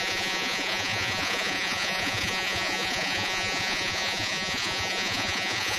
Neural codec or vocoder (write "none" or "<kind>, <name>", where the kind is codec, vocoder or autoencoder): vocoder, Vocos